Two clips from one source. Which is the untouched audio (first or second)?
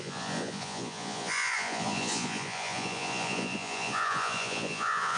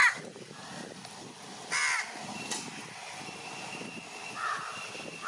second